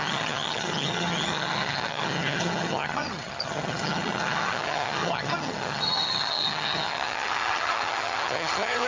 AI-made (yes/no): yes